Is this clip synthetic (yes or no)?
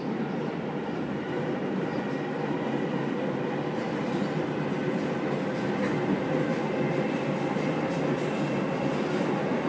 no